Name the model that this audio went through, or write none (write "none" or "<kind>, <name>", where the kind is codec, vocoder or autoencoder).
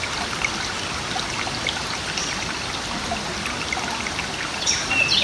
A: none